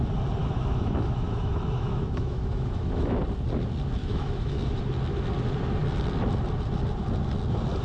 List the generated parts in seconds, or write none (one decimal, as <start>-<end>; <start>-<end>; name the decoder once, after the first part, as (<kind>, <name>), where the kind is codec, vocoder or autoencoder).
0.4-3.2 (autoencoder, DAC-VAE); 4.0-4.8